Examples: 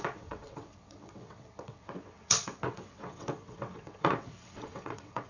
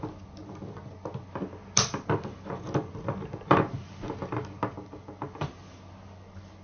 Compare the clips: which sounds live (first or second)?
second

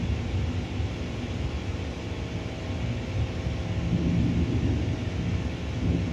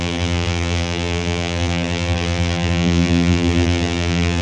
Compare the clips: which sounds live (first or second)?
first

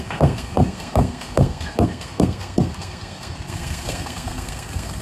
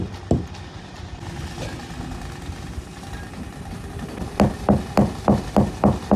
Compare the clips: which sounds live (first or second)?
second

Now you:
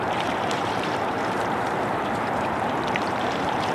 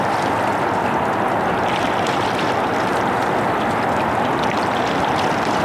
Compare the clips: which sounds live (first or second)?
second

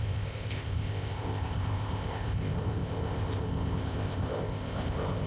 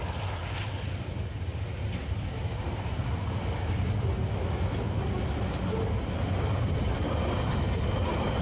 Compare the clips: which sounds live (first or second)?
second